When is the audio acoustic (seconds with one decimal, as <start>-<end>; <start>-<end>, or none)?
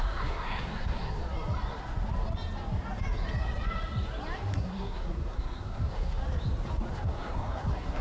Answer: 1.2-4.5; 6.2-6.9